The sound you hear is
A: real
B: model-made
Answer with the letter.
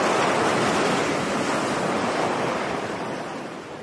A